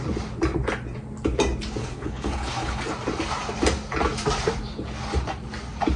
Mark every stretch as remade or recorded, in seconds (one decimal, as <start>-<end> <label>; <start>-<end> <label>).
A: 0.0-1.8 recorded; 1.8-2.8 remade; 2.8-6.0 recorded